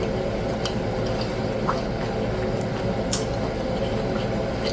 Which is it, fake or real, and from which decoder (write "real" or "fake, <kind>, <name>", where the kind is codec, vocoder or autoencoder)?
real